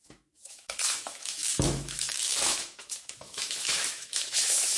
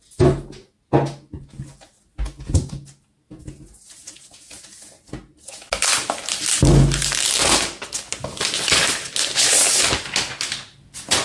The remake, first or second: first